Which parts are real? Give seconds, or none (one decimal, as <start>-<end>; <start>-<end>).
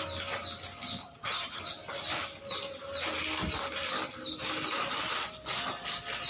0.0-1.0; 1.6-6.3